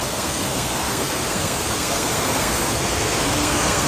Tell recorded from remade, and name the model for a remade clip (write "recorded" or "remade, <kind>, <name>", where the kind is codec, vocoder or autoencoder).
remade, codec, SNAC